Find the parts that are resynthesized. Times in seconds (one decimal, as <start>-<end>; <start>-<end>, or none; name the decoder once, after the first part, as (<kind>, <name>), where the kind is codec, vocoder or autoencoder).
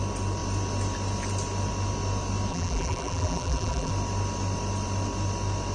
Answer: 2.5-3.9 (vocoder, BigVGAN v2)